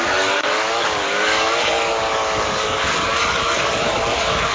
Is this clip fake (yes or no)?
yes